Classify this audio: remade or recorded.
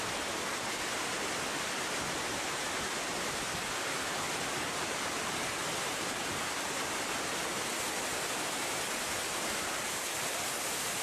recorded